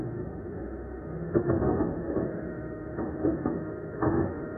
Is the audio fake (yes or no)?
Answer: yes